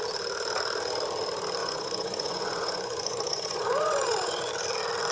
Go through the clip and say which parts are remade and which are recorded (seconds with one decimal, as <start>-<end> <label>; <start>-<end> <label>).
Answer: 0.0-1.6 recorded; 1.6-4.5 remade; 4.5-5.1 recorded